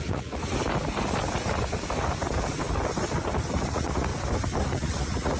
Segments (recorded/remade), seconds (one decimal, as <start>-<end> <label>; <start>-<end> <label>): 0.0-0.4 remade; 0.4-3.6 recorded; 3.6-4.1 remade; 4.1-4.6 recorded; 4.6-5.4 remade